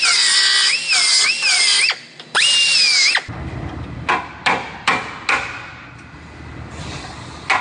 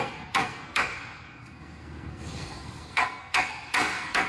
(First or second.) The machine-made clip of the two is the second